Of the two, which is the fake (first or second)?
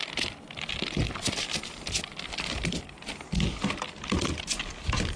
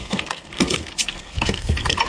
second